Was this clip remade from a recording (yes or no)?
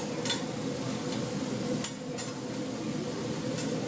no